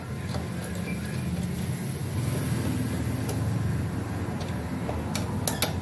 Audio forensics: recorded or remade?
recorded